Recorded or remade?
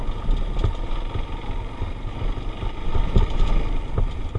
recorded